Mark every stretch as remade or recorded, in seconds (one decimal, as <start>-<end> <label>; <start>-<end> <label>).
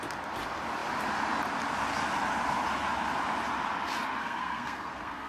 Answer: 0.0-4.2 recorded; 4.2-5.3 remade